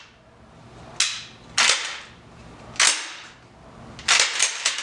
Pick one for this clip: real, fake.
real